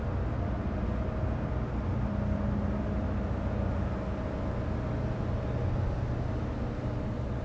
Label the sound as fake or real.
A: real